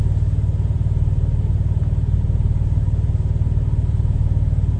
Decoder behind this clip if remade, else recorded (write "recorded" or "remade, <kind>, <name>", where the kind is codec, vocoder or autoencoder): recorded